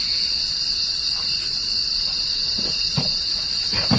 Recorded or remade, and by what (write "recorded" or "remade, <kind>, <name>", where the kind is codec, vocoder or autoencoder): recorded